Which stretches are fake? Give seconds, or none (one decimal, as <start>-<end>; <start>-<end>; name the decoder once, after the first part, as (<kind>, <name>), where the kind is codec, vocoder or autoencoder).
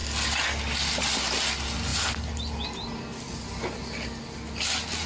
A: none